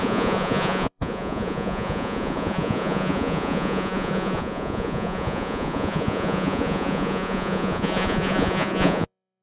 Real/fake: fake